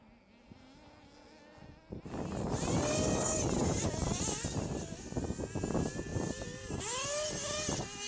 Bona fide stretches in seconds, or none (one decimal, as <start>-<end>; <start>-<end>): 0.0-3.6; 4.2-6.1; 6.8-8.1